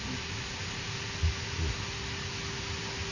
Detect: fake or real real